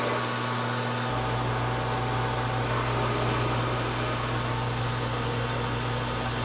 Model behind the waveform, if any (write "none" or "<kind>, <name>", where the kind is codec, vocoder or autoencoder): none